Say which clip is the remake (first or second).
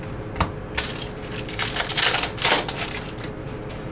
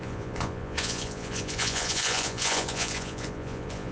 second